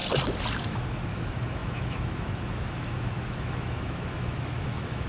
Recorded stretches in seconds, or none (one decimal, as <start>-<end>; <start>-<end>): 0.0-0.6